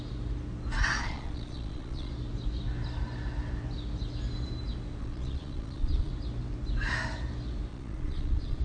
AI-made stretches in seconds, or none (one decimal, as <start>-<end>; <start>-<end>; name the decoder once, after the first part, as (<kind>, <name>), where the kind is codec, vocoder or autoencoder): 1.0-2.1 (vocoder, Vocos); 5.0-6.1; 7.7-8.6